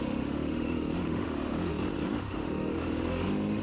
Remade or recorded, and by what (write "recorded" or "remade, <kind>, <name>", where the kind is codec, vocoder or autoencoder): remade, autoencoder, DAC-VAE